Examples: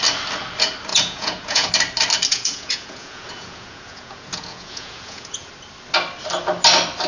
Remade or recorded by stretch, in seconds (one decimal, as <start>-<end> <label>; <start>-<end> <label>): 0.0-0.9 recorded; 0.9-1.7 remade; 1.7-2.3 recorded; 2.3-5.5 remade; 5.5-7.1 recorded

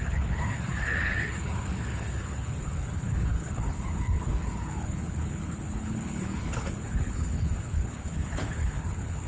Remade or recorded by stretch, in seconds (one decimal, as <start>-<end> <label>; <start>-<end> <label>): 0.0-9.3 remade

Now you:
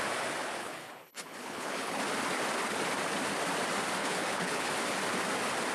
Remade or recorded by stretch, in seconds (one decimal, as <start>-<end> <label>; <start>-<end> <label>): 0.0-0.6 recorded; 0.6-2.0 remade; 2.0-4.0 recorded; 4.0-4.7 remade; 4.7-5.7 recorded

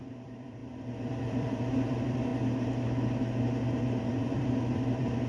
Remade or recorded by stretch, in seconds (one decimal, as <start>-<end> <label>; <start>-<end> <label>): 0.0-2.3 remade; 2.3-4.0 recorded; 4.0-5.3 remade

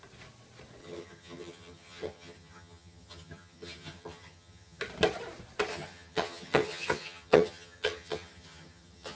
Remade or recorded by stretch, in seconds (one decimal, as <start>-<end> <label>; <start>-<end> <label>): 0.0-0.8 recorded; 0.8-4.8 remade; 4.8-5.7 recorded; 5.7-9.2 remade